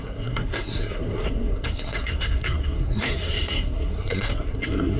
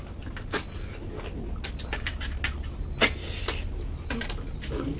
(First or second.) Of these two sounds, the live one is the second